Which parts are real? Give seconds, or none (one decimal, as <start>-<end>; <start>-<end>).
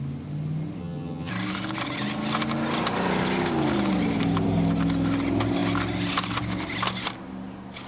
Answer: 0.0-0.8; 1.3-7.9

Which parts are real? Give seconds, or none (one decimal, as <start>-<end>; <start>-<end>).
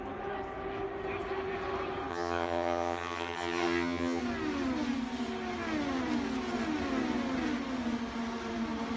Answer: 0.0-2.1; 4.2-9.0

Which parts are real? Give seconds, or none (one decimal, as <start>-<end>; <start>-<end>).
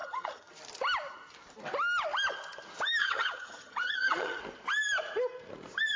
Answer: 0.5-3.0; 4.4-6.0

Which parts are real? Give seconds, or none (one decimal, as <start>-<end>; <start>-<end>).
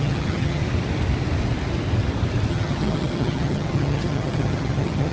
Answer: 0.6-2.5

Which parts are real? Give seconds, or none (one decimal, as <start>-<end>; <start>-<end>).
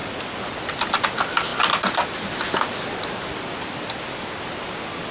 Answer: 0.0-5.1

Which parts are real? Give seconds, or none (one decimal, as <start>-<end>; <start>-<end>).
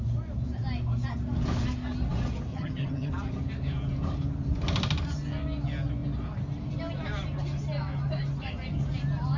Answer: 0.0-2.5; 3.1-9.4